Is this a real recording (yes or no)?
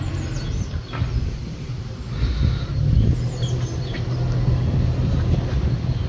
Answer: yes